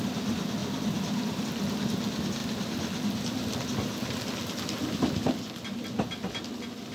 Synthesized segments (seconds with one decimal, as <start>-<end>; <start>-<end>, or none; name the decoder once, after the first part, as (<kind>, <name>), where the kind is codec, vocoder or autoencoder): none